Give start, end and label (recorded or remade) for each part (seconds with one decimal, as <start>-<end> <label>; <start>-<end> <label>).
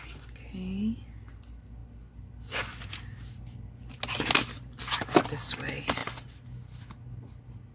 0.0-7.7 recorded